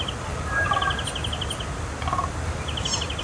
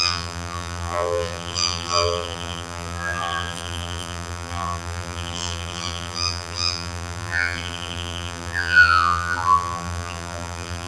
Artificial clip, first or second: second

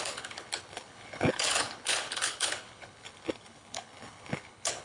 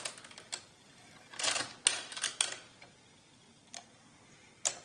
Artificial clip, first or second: first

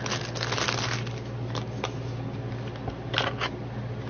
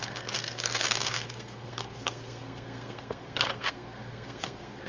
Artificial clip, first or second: second